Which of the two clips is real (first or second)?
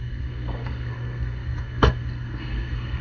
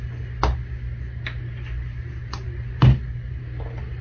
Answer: second